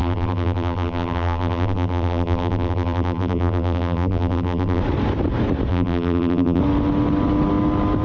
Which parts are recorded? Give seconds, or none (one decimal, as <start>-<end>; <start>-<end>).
4.8-5.7; 6.6-8.0